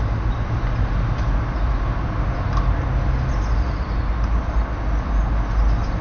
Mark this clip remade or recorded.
recorded